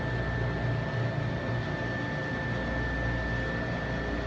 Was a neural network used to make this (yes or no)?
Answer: no